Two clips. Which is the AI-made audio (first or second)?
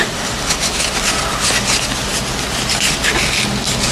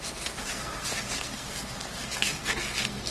second